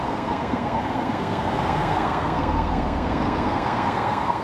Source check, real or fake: fake